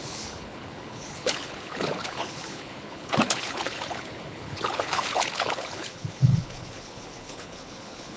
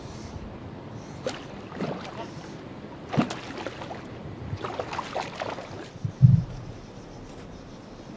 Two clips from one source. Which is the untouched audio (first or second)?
second